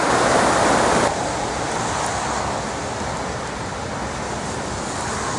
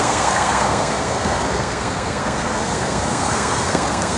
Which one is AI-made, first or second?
second